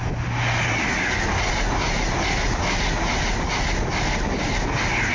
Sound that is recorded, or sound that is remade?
recorded